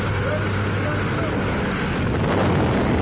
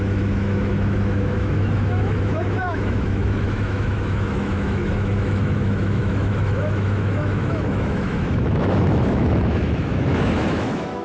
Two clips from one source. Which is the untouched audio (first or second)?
first